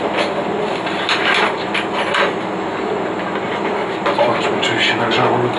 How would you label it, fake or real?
real